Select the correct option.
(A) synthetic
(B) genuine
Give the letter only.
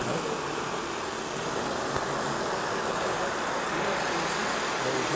B